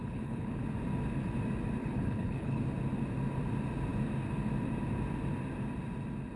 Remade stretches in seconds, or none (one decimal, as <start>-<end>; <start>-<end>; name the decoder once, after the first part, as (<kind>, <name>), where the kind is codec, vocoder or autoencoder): 0.0-0.6 (codec, HILCodec); 1.8-2.6